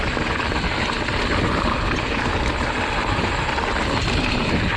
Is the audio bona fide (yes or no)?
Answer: yes